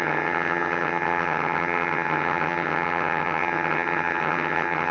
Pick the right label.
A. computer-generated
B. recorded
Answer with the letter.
A